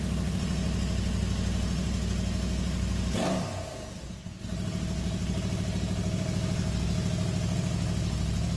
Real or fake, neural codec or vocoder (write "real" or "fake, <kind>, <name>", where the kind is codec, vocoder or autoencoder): real